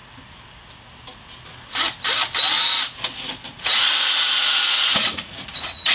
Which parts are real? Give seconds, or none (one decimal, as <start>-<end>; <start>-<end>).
0.0-3.5